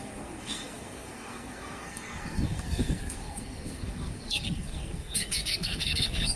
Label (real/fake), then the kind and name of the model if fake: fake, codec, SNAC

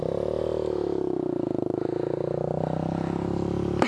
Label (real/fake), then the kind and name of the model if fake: real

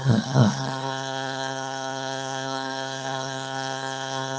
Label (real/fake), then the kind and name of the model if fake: fake, codec, SNAC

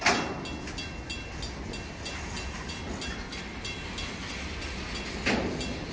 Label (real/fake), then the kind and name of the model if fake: real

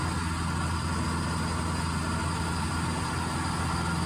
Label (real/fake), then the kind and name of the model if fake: real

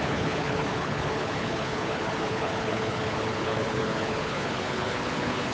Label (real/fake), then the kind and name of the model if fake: fake, codec, HILCodec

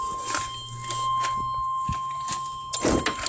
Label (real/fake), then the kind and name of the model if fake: real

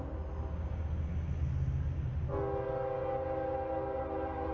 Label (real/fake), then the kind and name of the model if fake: real